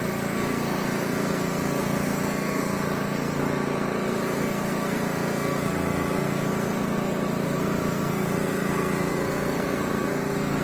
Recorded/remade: remade